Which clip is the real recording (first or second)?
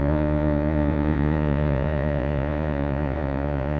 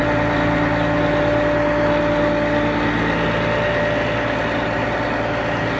second